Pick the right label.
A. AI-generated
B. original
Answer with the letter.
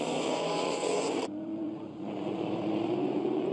A